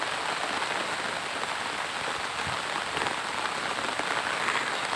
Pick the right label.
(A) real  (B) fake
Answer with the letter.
A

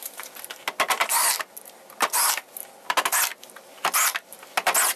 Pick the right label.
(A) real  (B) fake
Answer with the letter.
A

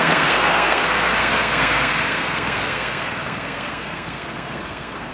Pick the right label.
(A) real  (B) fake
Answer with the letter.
B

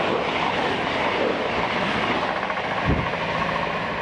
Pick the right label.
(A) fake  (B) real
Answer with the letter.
B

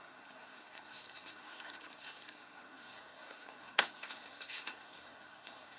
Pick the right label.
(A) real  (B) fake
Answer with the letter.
B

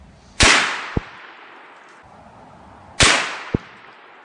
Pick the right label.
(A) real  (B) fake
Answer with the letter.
A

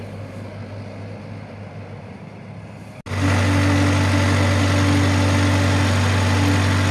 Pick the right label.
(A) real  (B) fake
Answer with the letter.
A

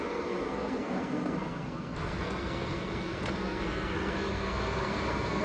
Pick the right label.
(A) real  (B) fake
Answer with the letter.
B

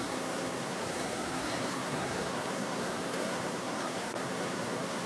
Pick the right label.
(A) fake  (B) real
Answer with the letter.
A